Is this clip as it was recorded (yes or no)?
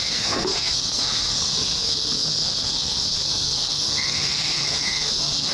no